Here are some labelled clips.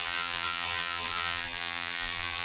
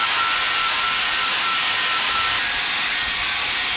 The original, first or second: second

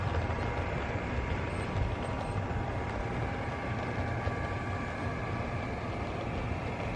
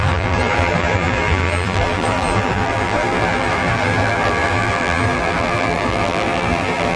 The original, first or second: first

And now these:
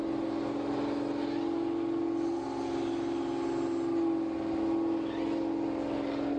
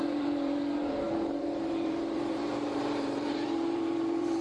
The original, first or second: first